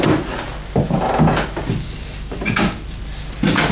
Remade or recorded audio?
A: recorded